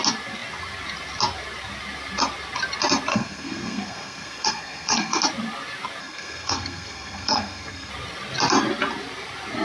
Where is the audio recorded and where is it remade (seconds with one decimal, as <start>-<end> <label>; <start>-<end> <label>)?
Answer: 0.0-3.1 recorded; 3.1-5.2 remade; 5.2-6.0 recorded; 6.0-7.9 remade; 7.9-9.6 recorded